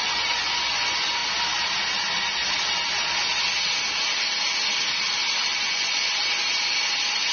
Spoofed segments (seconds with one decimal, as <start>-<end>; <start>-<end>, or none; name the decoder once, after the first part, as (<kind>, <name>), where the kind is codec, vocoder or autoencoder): 0.0-1.2 (vocoder, Vocos); 5.6-6.2